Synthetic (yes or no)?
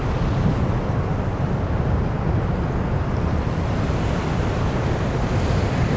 no